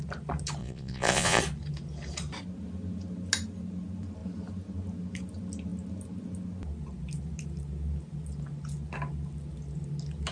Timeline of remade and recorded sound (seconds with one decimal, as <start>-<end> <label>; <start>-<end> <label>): 0.0-0.6 recorded; 0.6-1.4 remade; 1.4-10.3 recorded